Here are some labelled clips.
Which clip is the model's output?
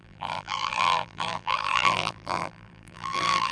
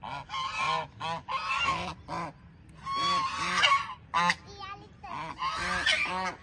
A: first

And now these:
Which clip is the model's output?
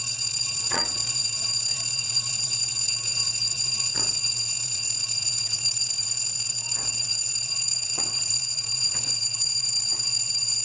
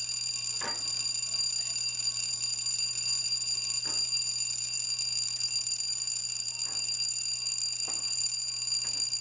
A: first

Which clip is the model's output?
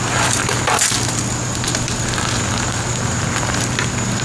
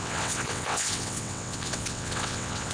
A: second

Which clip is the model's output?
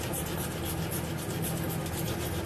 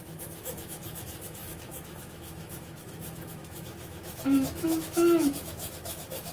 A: second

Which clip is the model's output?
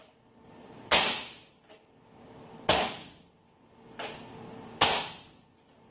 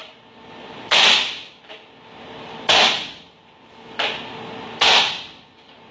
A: second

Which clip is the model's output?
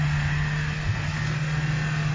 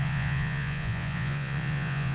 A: second